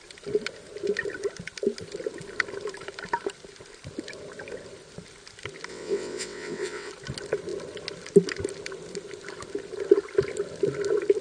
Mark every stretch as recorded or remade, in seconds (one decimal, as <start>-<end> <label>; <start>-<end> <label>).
0.0-5.7 recorded; 5.7-6.9 remade; 6.9-11.2 recorded